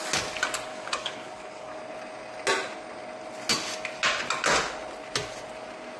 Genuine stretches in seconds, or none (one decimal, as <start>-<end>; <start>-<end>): 0.0-0.7; 1.8-6.0